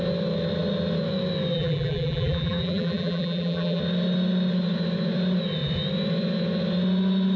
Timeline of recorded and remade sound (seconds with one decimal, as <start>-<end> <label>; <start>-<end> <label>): 0.0-1.5 recorded; 1.5-3.8 remade; 3.8-7.4 recorded